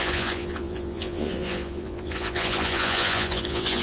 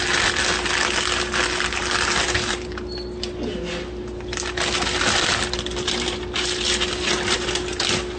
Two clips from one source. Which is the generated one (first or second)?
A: first